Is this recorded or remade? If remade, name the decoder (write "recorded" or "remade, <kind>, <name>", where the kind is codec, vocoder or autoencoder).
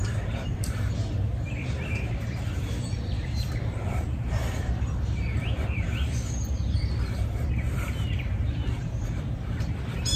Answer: remade, vocoder, BigVGAN v2